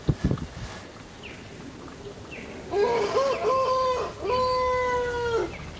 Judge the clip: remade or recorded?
recorded